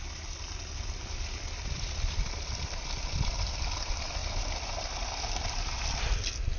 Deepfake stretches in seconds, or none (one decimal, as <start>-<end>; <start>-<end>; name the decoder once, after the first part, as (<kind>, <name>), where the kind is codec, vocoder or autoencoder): none